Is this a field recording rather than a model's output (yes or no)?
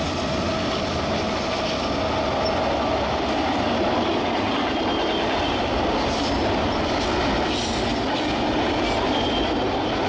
yes